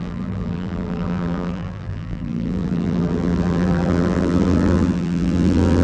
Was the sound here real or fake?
fake